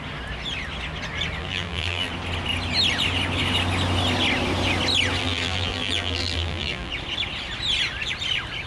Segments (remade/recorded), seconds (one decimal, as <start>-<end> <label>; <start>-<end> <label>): 0.0-1.4 recorded; 1.4-2.1 remade; 2.1-5.2 recorded; 5.2-6.9 remade; 6.9-8.7 recorded